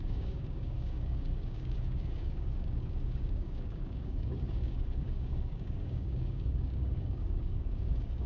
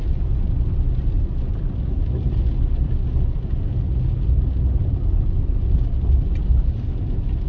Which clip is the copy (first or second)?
first